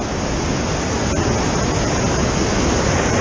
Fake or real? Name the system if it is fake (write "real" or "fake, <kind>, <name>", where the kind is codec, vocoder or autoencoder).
real